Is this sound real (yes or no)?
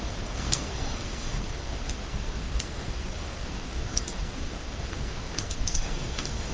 no